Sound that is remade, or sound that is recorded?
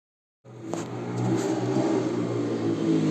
recorded